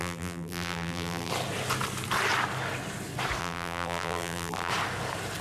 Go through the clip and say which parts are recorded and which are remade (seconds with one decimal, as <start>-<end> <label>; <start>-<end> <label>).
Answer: 0.0-1.3 remade; 1.3-3.4 recorded; 3.4-4.7 remade; 4.7-5.4 recorded